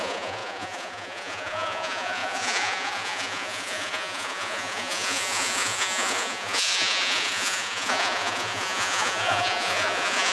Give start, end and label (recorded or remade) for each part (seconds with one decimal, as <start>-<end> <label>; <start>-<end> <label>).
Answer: 0.0-10.3 remade